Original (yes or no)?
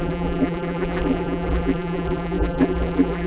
no